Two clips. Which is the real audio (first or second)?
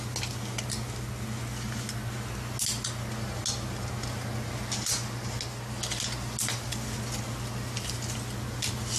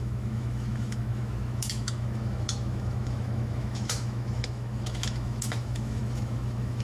first